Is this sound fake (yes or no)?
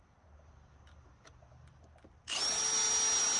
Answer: no